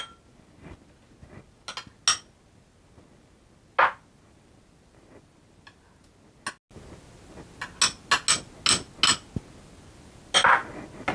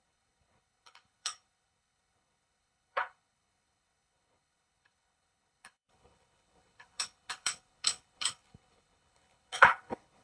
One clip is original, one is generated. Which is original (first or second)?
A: first